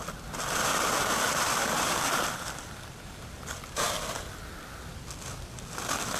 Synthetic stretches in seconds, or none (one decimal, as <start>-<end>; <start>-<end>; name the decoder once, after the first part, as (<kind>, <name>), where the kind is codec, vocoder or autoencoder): 0.7-4.4 (vocoder, BigVGAN v2)